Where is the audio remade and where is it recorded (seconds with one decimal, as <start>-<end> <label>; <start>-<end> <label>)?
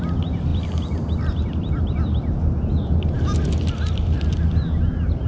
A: 0.0-5.3 recorded